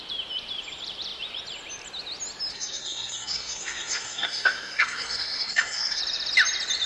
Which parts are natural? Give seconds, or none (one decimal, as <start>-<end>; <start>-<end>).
0.0-2.5; 6.0-6.9